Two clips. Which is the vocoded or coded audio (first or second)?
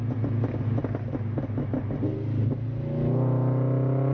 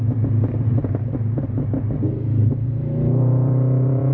second